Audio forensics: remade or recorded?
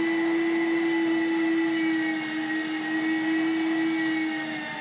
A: recorded